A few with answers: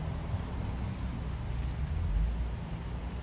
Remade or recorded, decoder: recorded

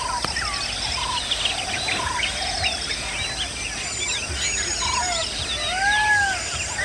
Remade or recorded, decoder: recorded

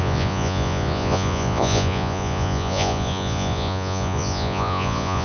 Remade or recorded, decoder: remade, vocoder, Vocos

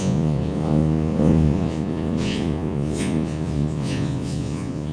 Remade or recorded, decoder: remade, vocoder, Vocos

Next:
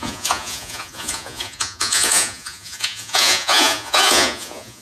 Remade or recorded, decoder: remade, vocoder, Vocos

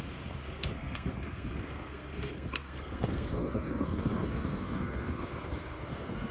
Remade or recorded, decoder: remade, codec, SNAC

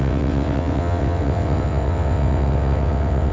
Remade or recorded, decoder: remade, vocoder, WaveNeXt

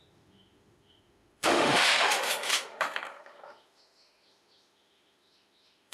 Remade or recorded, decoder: remade, autoencoder, DAC-VAE